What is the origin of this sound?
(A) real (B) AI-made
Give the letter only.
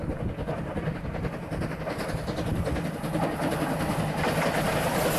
A